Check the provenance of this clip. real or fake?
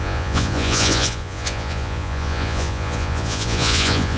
fake